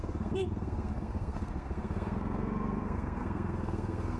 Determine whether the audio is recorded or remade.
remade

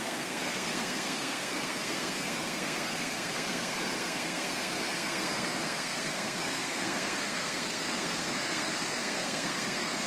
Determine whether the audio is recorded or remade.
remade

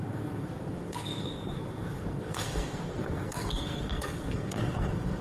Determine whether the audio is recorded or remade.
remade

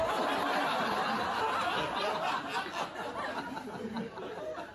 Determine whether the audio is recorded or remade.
recorded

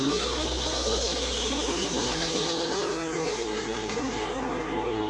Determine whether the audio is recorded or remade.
remade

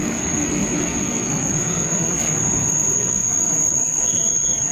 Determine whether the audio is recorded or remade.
remade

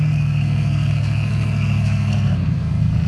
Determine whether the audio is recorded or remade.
remade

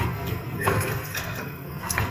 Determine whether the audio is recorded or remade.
remade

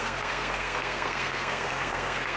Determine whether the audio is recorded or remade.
remade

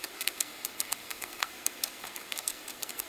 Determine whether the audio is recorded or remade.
remade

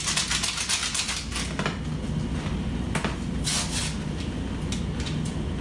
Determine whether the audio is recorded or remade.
recorded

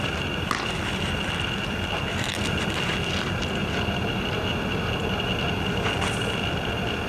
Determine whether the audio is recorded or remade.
recorded